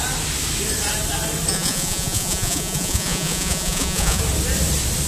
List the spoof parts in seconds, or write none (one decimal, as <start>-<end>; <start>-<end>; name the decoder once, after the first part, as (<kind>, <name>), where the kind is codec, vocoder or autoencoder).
1.5-4.2 (vocoder, Vocos)